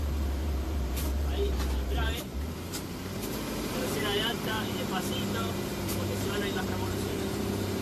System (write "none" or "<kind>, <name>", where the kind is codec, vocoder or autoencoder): vocoder, BigVGAN v2